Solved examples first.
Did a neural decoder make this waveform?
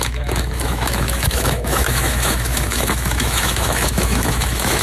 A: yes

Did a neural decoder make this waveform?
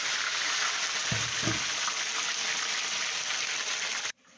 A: no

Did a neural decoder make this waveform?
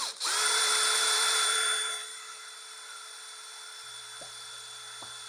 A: yes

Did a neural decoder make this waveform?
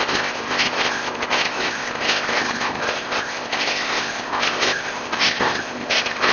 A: yes